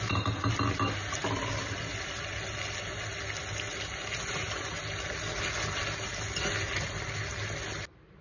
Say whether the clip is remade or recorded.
recorded